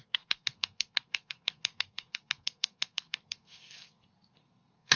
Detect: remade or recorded remade